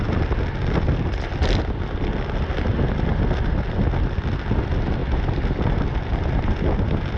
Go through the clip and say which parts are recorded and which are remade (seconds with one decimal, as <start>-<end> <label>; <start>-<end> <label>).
0.0-7.2 recorded